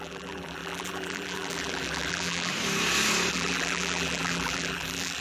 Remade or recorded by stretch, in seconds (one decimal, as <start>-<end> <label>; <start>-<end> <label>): 0.0-2.5 remade; 2.5-3.3 recorded; 3.3-5.2 remade